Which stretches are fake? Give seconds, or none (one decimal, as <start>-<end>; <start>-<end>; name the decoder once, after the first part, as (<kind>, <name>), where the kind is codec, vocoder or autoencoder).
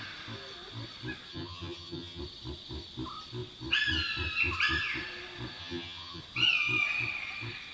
1.3-2.2 (vocoder, HiFi-GAN); 5.6-6.2